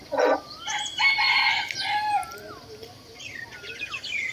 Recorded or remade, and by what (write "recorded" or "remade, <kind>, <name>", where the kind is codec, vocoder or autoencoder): recorded